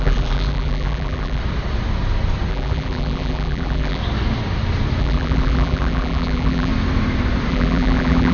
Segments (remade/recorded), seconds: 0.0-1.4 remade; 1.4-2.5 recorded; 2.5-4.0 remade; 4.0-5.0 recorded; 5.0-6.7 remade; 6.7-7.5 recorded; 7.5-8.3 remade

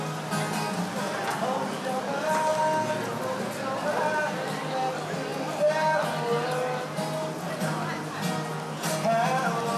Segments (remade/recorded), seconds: 0.0-9.8 recorded

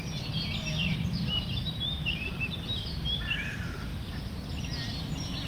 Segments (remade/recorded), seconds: 0.0-0.9 recorded; 0.9-3.3 remade; 3.3-5.5 recorded